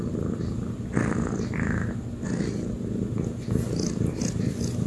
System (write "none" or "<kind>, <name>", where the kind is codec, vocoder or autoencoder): none